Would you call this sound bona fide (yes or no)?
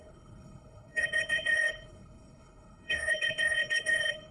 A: no